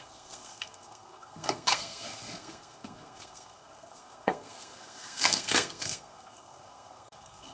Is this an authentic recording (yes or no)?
no